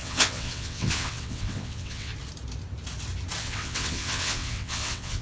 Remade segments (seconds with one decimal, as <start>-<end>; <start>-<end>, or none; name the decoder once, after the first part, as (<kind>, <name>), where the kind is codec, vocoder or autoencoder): 0.0-2.1 (vocoder, WaveNeXt); 3.4-5.2